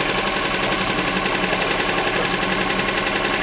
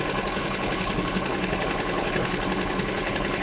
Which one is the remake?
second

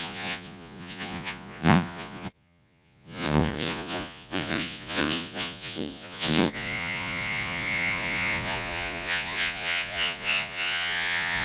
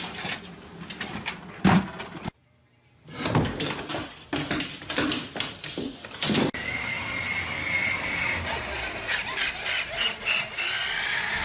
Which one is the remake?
first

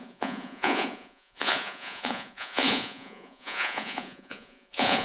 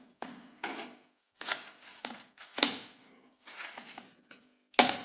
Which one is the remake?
first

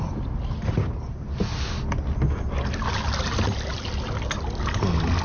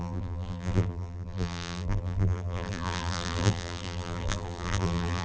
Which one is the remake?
second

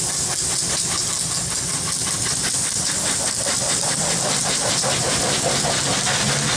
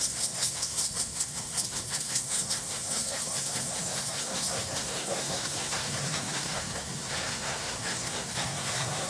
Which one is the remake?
second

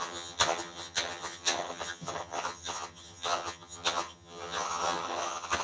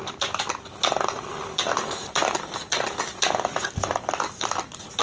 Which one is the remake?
first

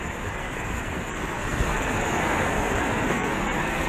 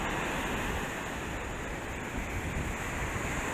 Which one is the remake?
first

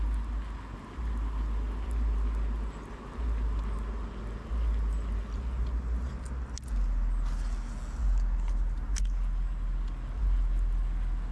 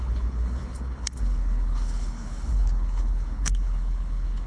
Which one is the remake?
second